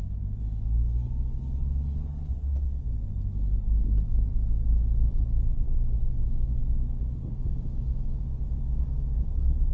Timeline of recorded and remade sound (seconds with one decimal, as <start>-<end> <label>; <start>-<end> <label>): 0.0-9.7 recorded